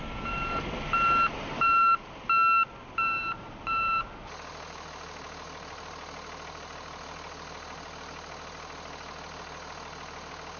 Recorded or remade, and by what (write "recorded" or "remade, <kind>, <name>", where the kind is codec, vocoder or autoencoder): recorded